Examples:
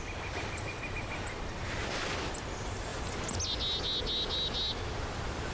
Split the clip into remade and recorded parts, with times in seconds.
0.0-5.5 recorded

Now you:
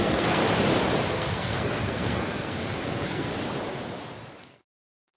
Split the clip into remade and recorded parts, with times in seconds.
0.0-0.4 remade; 0.4-1.1 recorded; 1.1-3.3 remade; 3.3-4.4 recorded; 4.4-5.2 remade

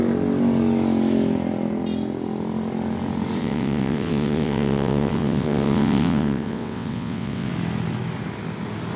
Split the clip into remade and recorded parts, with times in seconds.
0.0-3.4 recorded; 3.4-7.5 remade; 7.5-9.0 recorded

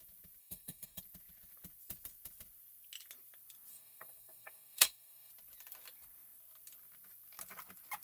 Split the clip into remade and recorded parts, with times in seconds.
0.0-0.4 recorded; 0.4-1.0 remade; 1.0-3.7 recorded; 3.7-5.3 remade; 5.3-8.0 recorded

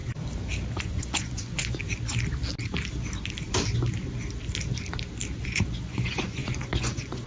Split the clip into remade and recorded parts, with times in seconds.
0.0-0.8 recorded; 0.8-1.8 remade; 1.8-5.4 recorded; 5.4-7.3 remade

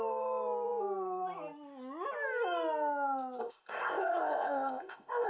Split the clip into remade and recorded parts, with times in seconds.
0.0-3.4 recorded; 3.4-5.3 remade

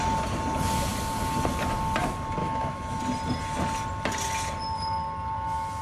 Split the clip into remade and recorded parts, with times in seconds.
0.0-2.4 recorded; 2.4-3.0 remade; 3.0-5.8 recorded